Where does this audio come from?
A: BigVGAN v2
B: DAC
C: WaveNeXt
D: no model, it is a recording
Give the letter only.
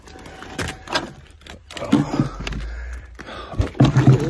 D